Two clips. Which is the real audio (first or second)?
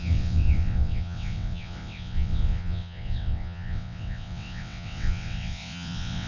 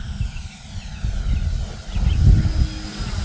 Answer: second